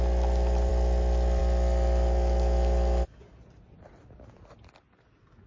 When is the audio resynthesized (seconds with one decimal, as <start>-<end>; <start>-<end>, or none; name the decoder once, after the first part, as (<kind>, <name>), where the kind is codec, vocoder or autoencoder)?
none